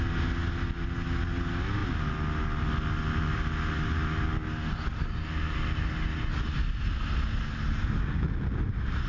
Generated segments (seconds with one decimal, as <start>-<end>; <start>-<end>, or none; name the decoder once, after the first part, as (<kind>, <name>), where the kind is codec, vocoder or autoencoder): none